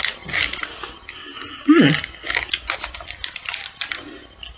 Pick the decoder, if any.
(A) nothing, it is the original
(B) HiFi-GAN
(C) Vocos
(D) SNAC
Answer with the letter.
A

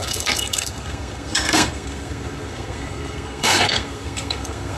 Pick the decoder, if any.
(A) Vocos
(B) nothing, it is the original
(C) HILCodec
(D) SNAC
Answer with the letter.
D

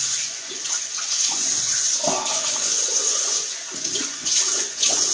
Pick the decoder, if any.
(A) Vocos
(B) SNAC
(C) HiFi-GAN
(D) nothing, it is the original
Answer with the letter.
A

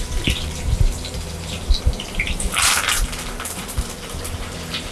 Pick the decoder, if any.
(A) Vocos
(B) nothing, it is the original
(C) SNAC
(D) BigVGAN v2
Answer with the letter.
D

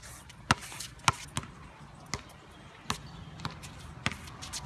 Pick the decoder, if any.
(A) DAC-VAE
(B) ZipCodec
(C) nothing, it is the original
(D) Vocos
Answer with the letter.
C